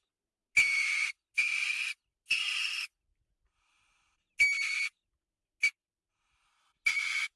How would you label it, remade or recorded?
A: recorded